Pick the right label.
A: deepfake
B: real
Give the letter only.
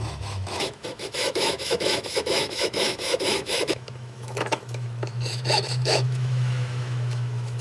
A